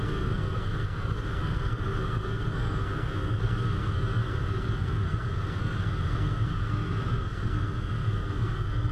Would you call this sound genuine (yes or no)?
no